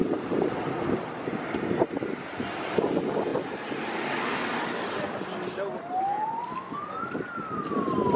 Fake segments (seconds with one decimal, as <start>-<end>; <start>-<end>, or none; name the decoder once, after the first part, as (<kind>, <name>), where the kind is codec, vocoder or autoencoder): none